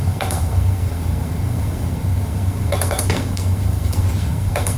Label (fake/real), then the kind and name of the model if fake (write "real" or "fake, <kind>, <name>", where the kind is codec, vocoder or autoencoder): fake, codec, SNAC